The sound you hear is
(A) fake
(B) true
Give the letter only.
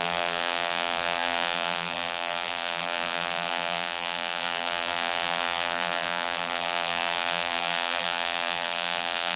A